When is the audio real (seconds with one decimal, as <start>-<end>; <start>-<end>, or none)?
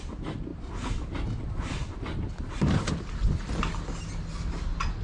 0.0-5.0